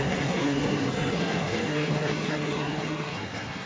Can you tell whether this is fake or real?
fake